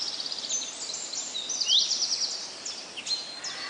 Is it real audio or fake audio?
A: real